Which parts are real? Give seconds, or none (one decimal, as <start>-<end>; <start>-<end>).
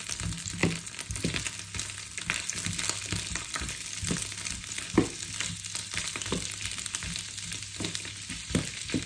0.0-9.1